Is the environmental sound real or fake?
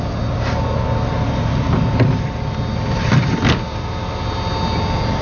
real